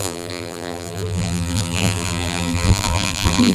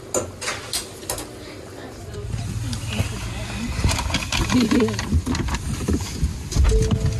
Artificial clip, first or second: first